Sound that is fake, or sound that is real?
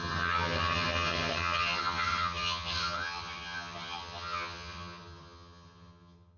fake